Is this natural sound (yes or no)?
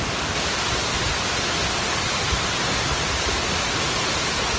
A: yes